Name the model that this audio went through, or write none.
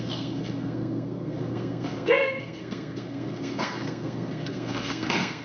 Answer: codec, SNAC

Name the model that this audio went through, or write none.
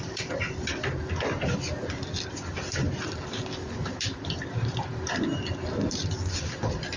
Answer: none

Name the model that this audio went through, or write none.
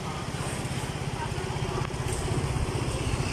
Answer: none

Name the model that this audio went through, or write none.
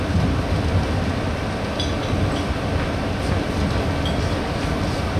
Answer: none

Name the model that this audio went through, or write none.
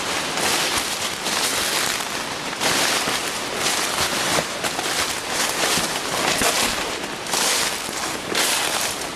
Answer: none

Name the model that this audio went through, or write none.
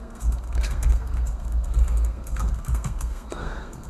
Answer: codec, SNAC